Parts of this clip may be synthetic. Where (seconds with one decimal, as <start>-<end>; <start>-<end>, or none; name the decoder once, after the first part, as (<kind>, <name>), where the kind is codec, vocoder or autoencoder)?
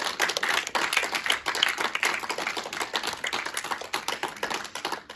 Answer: none